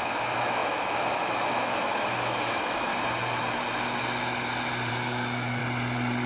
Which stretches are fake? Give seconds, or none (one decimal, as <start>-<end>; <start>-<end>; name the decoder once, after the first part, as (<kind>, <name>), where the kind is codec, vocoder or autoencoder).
0.0-2.9 (autoencoder, DAC-VAE); 4.9-5.6